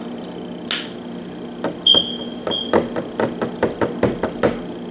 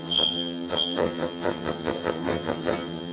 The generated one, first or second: second